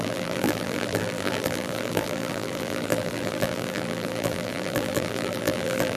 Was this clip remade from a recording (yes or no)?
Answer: yes